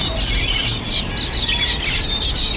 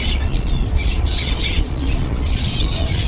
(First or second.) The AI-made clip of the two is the second